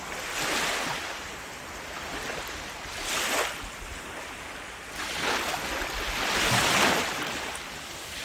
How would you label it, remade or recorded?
recorded